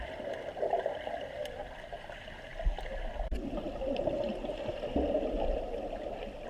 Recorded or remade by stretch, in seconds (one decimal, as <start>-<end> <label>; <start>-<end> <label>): 0.0-6.5 recorded